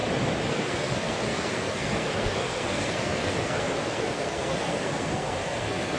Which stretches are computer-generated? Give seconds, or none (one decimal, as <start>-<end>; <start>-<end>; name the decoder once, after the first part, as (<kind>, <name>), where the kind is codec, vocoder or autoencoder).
0.5-6.0 (codec, SNAC)